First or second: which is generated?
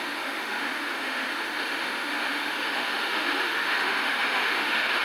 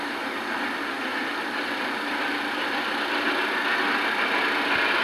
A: first